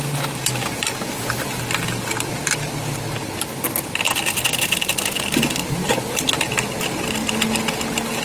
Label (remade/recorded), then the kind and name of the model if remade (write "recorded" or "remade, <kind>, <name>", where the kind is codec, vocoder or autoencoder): recorded